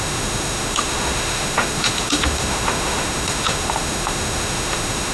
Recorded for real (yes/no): no